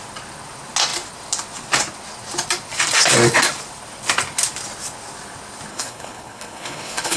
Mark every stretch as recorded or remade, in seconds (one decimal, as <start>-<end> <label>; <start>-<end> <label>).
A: 0.0-5.7 recorded; 5.7-7.2 remade